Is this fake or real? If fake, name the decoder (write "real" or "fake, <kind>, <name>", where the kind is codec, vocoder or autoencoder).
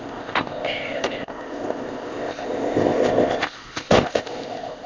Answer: fake, codec, ZipCodec